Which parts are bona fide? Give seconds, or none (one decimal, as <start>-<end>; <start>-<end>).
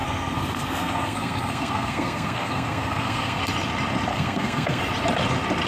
3.4-4.1; 4.8-5.7